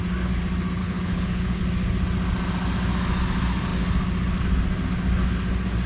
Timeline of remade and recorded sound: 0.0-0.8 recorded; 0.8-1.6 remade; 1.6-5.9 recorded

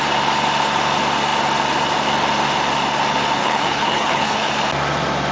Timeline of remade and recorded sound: 0.0-3.4 recorded; 3.4-4.5 remade; 4.5-5.3 recorded

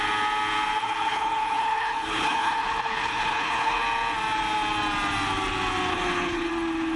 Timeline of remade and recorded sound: 0.0-0.8 recorded; 0.8-3.8 remade; 3.8-5.9 recorded; 5.9-6.5 remade; 6.5-7.0 recorded

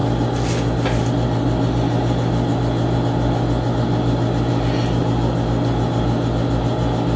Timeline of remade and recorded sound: 0.0-7.2 recorded

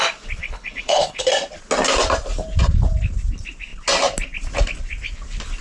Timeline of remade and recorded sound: 0.0-0.4 recorded; 0.4-1.3 remade; 1.3-5.6 recorded

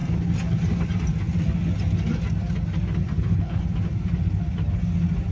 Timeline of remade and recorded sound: 0.0-3.1 recorded; 3.1-3.6 remade; 3.6-5.3 recorded

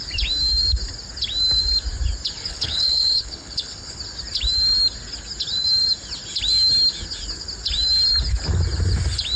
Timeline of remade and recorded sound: 0.0-2.4 recorded; 2.4-4.0 remade; 4.0-9.4 recorded

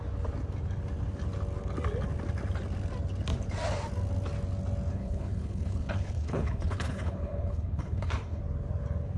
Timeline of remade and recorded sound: 0.0-4.9 recorded; 4.9-8.4 remade; 8.4-9.2 recorded